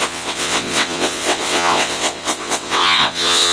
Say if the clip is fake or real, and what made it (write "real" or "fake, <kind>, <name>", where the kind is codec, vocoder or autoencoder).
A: fake, vocoder, WaveNeXt